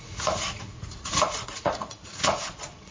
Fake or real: fake